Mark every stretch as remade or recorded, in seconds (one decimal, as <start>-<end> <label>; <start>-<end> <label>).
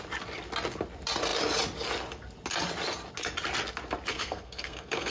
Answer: 0.0-4.1 recorded; 4.1-5.1 remade